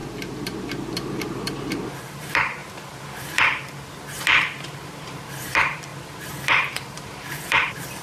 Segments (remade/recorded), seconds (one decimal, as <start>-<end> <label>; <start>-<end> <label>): 0.0-2.2 recorded; 2.2-2.6 remade; 2.6-3.4 recorded; 3.4-5.9 remade; 5.9-6.4 recorded; 6.4-8.0 remade

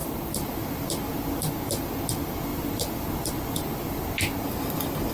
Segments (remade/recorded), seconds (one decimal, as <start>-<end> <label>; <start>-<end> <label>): 0.0-0.6 remade; 0.6-2.5 recorded; 2.5-4.1 remade; 4.1-5.1 recorded

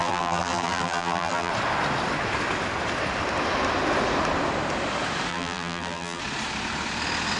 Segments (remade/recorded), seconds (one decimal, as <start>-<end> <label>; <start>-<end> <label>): 0.0-1.5 remade; 1.5-5.3 recorded; 5.3-6.2 remade; 6.2-7.4 recorded

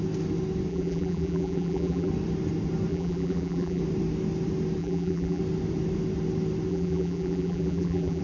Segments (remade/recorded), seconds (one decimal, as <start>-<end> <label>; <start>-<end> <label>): 0.0-0.7 recorded; 0.7-2.1 remade; 2.1-2.9 recorded; 2.9-3.8 remade; 3.8-4.8 recorded; 4.8-5.4 remade; 5.4-6.7 recorded; 6.7-8.2 remade